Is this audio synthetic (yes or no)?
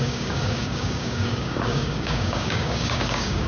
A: yes